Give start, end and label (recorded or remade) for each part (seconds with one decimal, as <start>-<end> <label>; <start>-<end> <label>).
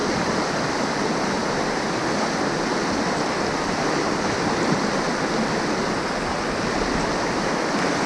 0.0-8.1 recorded